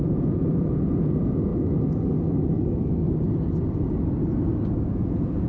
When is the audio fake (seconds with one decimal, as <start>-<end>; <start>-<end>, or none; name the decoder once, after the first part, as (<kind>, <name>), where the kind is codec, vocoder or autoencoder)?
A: 0.0-1.5 (vocoder, Vocos); 4.8-5.5

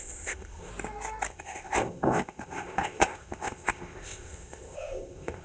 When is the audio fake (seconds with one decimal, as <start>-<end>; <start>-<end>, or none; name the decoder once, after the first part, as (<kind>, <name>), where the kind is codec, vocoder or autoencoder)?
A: 0.0-0.7 (codec, ZipCodec); 1.3-5.4

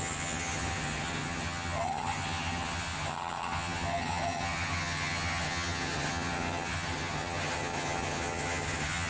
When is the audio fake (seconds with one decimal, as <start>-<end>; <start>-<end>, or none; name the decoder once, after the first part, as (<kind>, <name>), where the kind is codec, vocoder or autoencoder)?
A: 0.0-9.1 (vocoder, HiFi-GAN)

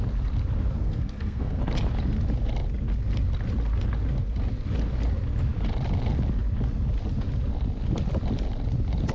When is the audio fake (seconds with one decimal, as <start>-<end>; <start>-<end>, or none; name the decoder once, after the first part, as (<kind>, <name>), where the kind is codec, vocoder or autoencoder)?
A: 0.8-1.6 (codec, SNAC)

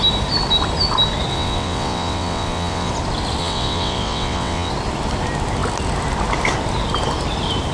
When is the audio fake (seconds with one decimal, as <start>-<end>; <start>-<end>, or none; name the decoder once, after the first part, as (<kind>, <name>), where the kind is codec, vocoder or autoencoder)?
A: 1.3-2.9 (vocoder, WaveNeXt); 3.4-4.7

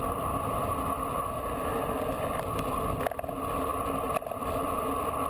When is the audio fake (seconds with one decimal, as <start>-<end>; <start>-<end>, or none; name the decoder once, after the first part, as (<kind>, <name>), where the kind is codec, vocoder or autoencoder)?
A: 1.7-2.4 (vocoder, BigVGAN v2); 3.7-4.7

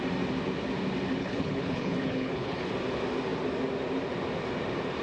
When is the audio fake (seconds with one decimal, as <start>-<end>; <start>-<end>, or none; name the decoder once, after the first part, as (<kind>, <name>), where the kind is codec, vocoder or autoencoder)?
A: 1.2-2.7 (codec, HILCodec)

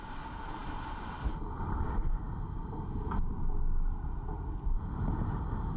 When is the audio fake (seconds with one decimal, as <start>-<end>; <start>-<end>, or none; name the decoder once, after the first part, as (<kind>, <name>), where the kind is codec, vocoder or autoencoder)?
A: none